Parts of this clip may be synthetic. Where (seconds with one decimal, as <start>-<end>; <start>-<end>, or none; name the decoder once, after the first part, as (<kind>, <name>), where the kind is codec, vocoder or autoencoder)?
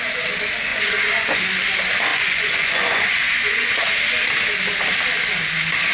0.7-1.4 (vocoder, Vocos); 2.1-3.8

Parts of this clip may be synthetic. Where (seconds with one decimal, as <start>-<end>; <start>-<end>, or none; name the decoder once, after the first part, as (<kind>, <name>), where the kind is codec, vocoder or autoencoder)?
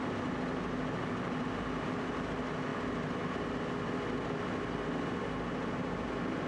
none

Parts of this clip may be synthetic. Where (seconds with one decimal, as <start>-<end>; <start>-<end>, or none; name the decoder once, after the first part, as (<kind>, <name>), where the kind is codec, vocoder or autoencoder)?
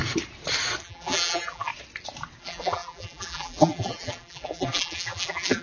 0.8-1.7 (vocoder, BigVGAN v2); 2.4-5.6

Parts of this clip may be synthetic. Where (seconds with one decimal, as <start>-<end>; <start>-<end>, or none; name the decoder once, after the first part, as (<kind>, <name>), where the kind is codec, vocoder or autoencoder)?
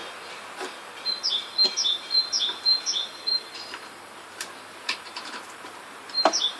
3.1-6.6 (vocoder, BigVGAN v2)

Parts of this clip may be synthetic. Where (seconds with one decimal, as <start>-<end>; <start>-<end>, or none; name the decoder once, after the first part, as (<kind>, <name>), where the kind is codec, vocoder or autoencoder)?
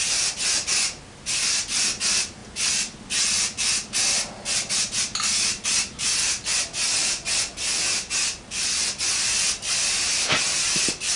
none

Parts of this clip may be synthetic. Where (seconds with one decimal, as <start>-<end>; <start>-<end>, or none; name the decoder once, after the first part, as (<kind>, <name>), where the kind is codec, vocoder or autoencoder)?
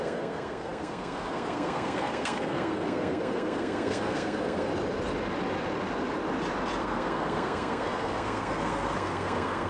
0.0-4.7 (codec, SNAC); 6.8-9.7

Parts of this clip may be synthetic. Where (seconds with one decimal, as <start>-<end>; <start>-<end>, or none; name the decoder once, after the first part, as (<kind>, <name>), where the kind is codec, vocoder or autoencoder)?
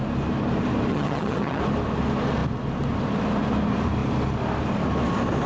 0.9-1.6 (vocoder, HiFi-GAN)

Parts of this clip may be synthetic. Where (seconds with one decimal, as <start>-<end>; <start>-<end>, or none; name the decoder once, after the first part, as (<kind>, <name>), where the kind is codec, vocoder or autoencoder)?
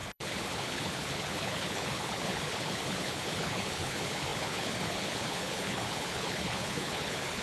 0.0-7.4 (codec, HILCodec)